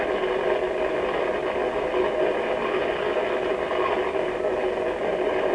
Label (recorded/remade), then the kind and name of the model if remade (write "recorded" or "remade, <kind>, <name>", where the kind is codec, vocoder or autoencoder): recorded